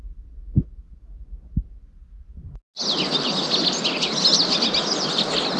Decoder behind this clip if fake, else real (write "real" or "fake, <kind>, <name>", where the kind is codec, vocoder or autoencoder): real